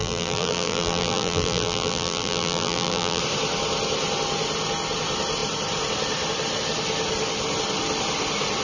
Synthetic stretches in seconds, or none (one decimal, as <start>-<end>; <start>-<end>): 0.0-3.2

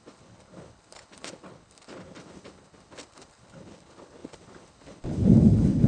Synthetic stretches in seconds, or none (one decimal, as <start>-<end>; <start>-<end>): 0.0-5.9

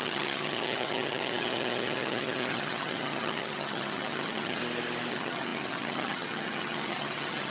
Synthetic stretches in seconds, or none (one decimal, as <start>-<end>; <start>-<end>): 0.0-4.6; 5.1-7.5

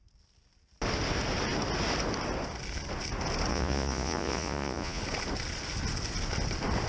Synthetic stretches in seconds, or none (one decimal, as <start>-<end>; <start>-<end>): 3.5-5.0

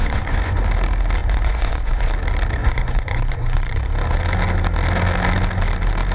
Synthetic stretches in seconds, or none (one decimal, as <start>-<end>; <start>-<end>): 0.0-0.6; 1.2-2.1; 2.6-3.9

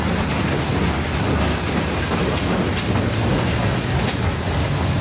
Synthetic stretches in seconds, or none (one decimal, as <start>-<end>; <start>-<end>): none

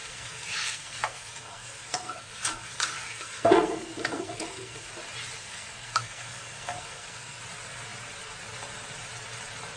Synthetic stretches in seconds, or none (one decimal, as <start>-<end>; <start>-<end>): 0.0-4.9; 5.4-7.4

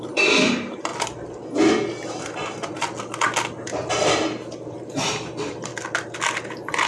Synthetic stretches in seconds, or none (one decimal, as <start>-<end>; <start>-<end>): 0.0-0.9; 2.1-2.8; 4.0-5.7; 6.3-6.9